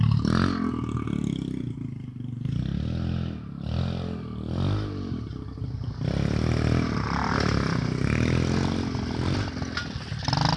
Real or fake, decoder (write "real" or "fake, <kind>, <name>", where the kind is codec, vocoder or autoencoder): real